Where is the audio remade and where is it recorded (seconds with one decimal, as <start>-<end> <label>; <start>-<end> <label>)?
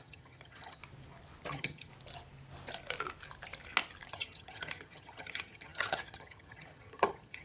0.0-0.8 remade; 0.8-1.5 recorded; 1.5-1.9 remade; 1.9-4.1 recorded; 4.1-7.4 remade